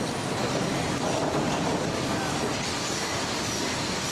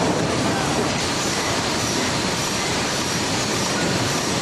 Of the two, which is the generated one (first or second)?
second